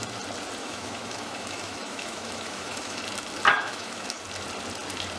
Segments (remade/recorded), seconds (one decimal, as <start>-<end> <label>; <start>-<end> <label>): 0.0-0.6 recorded; 0.6-3.0 remade; 3.0-3.5 recorded; 3.5-4.2 remade; 4.2-5.2 recorded